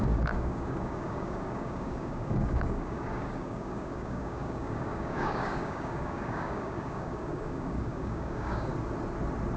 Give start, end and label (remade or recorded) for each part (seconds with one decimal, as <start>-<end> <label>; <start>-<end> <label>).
0.0-8.7 remade; 8.7-9.6 recorded